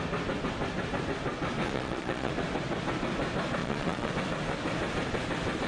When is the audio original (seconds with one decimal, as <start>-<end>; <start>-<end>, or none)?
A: 0.0-1.6; 2.3-3.6; 4.1-5.7